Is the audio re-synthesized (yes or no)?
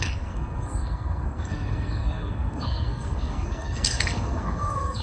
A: yes